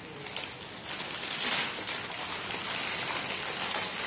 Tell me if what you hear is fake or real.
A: real